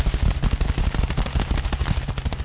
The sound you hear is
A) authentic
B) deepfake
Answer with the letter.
A